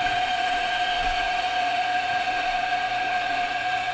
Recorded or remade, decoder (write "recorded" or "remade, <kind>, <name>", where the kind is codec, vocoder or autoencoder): remade, vocoder, Vocos